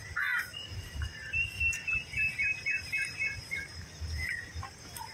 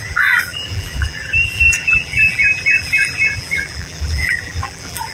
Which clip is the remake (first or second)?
second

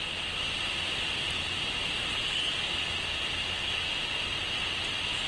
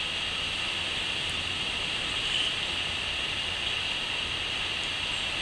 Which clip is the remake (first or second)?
second